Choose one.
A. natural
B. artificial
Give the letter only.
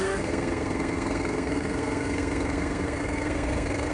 B